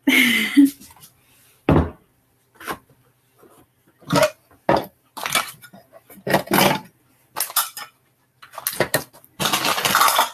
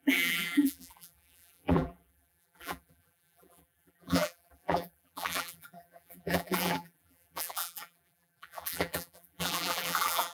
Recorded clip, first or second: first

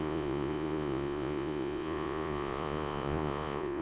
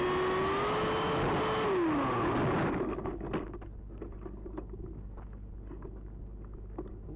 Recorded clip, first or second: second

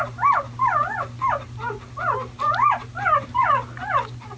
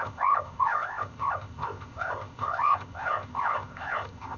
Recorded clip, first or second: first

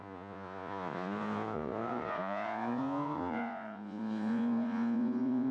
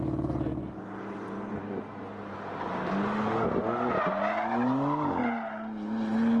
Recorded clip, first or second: second